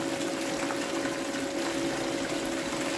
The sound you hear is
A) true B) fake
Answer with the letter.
A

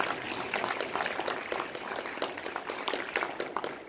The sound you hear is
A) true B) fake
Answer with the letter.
A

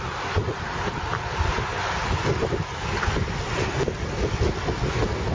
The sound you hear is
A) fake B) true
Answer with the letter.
B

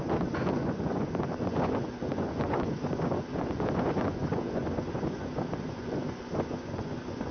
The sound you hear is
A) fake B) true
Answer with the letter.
A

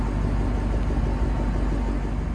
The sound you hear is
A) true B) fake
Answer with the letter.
A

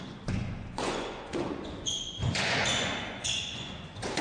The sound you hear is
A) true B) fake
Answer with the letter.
B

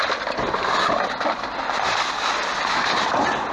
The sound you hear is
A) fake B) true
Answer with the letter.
B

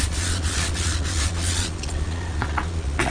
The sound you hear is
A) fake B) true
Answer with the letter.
A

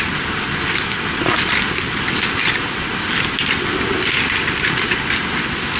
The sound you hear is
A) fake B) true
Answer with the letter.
B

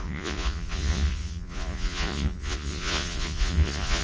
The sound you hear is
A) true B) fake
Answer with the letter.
B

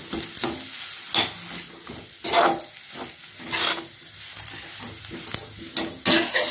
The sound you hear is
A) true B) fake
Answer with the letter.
A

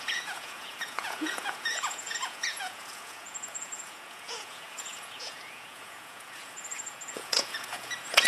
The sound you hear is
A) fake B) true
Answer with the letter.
A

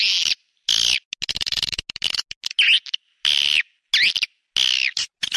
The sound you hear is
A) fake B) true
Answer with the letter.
B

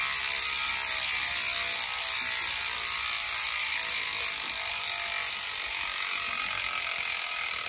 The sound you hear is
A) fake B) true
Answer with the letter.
B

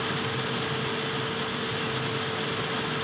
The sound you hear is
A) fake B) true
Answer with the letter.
B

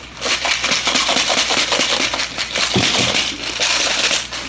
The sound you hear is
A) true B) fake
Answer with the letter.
A